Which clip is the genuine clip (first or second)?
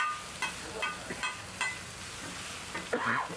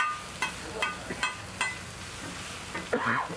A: second